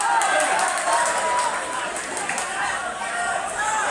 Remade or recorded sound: recorded